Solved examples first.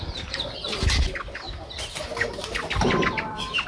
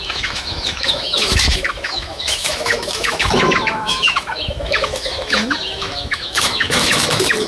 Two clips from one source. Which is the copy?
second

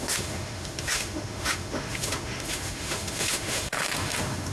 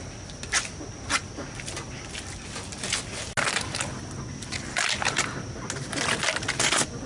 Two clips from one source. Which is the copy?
first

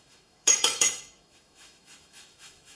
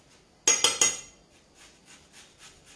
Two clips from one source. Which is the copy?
first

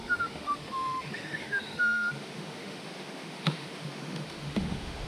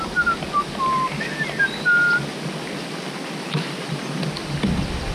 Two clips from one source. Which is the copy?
first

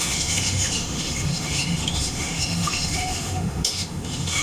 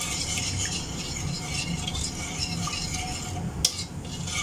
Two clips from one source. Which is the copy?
first